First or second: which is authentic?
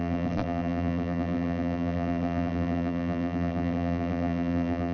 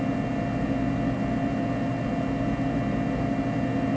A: second